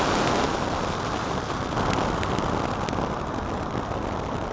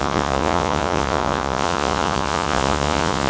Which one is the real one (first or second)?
first